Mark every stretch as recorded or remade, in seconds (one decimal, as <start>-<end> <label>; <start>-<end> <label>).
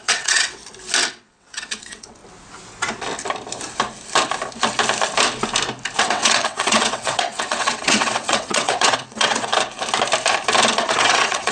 0.0-0.6 remade; 0.6-1.1 recorded; 1.1-2.2 remade; 2.2-6.0 recorded; 6.0-9.5 remade; 9.5-10.8 recorded; 10.8-11.5 remade